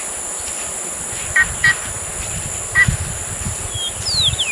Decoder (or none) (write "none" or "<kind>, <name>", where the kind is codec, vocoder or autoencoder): none